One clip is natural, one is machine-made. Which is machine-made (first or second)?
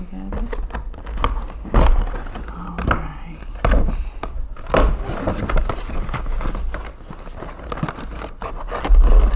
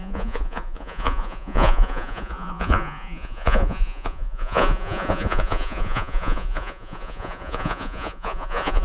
second